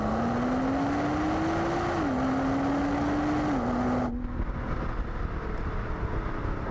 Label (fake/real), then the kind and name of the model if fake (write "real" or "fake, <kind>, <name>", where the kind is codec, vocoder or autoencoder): real